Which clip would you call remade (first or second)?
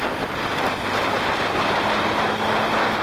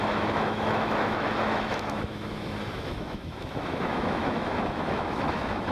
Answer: second